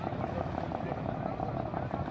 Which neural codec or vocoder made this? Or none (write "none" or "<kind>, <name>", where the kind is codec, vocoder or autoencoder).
none